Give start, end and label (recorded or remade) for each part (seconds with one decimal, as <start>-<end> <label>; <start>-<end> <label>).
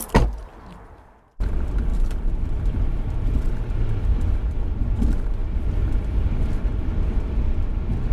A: 0.0-1.9 recorded; 1.9-4.0 remade; 4.0-5.4 recorded; 5.4-6.6 remade; 6.6-8.1 recorded